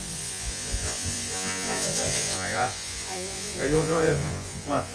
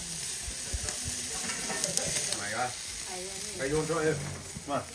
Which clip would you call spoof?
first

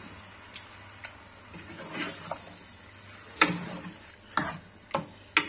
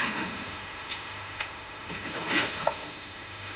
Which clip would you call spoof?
second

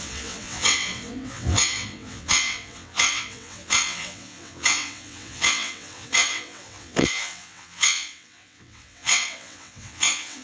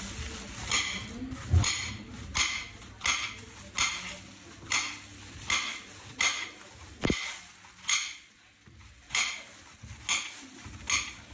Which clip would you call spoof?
first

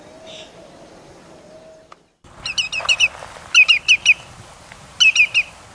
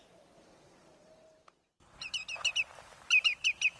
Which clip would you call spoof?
second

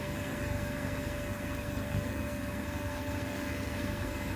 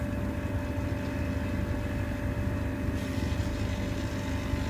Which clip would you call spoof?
first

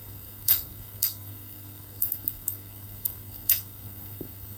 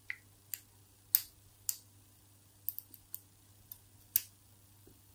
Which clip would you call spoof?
first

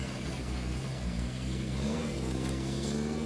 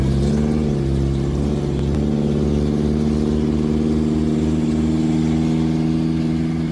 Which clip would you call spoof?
first